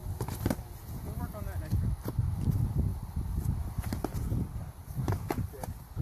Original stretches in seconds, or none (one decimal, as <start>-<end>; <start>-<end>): 0.0-4.8; 5.6-6.0